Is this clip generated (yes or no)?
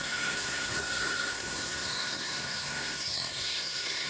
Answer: yes